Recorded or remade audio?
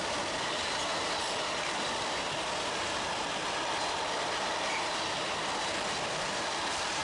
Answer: remade